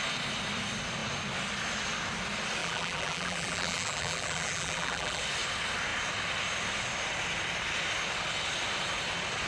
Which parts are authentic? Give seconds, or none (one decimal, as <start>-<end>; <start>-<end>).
0.0-2.6; 5.2-9.5